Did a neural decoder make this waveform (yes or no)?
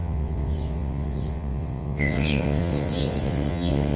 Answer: yes